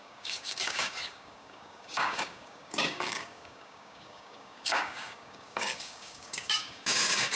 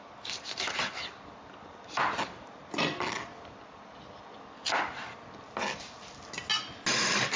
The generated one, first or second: first